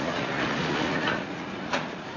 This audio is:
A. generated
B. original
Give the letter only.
A